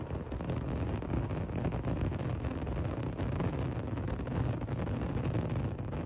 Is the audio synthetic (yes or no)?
no